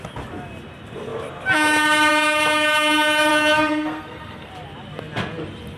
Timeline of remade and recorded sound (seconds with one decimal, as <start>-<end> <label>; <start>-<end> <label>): 0.0-3.3 recorded; 3.3-4.5 remade; 4.5-5.8 recorded